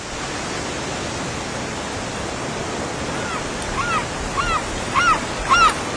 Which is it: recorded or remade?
recorded